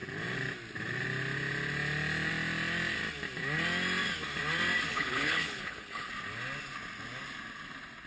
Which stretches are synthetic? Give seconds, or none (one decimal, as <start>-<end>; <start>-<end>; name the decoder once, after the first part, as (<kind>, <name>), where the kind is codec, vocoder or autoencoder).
4.9-6.1 (codec, HILCodec)